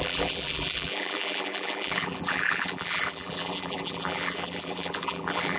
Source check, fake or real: fake